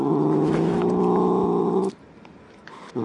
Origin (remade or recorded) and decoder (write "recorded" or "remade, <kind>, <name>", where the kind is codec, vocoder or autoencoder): recorded